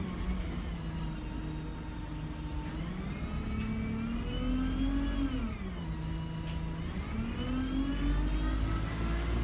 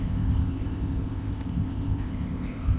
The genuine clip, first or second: first